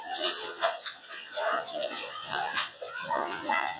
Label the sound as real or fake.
fake